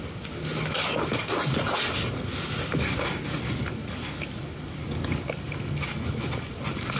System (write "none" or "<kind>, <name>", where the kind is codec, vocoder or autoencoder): none